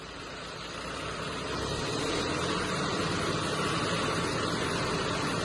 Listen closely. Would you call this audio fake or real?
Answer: real